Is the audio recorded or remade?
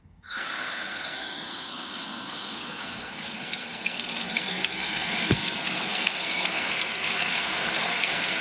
remade